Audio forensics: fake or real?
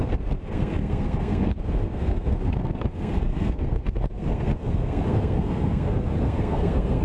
fake